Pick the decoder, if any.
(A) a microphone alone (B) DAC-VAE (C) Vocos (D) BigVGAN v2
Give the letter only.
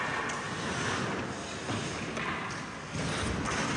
A